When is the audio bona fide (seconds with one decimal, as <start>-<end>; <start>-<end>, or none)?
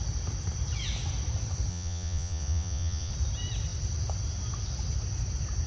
0.0-1.7; 3.1-5.7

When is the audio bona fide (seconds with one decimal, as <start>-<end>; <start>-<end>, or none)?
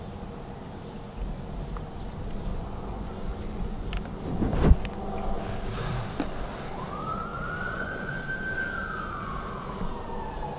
0.0-2.5; 3.9-7.3; 8.2-8.8; 9.3-10.6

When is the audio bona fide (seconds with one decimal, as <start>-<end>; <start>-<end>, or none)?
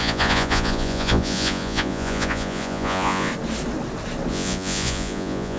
3.3-4.3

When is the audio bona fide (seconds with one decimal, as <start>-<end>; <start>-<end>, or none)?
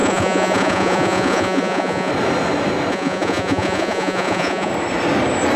2.1-2.9; 4.7-5.6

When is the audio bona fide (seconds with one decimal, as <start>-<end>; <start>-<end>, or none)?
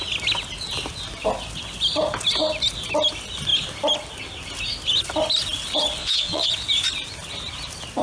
0.0-6.0; 6.5-8.0